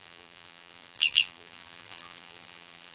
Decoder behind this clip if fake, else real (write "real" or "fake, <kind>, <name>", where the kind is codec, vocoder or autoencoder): fake, vocoder, BigVGAN v2